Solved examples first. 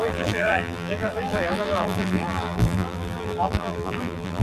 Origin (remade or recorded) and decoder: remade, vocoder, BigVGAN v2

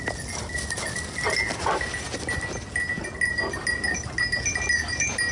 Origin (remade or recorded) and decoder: recorded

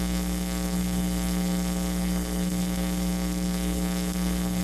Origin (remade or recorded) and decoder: remade, codec, SNAC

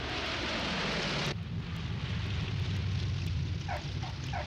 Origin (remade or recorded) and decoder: recorded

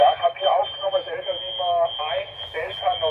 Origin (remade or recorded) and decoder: recorded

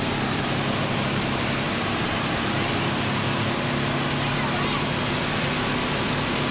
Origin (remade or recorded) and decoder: recorded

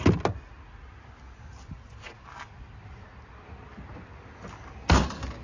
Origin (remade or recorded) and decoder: recorded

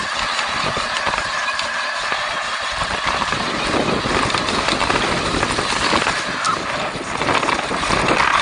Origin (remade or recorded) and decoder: recorded